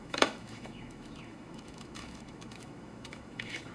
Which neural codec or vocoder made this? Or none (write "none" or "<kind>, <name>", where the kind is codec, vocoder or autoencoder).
autoencoder, DAC-VAE